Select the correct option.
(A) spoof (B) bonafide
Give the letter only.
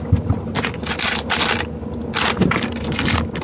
B